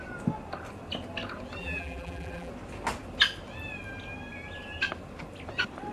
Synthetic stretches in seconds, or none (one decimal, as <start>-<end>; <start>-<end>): 1.6-2.5